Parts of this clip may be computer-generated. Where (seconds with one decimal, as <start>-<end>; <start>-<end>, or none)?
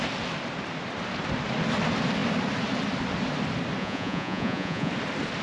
3.8-4.9